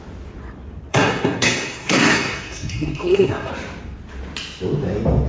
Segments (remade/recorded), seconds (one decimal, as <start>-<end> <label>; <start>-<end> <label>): 0.0-0.9 recorded; 0.9-3.5 remade; 3.5-5.3 recorded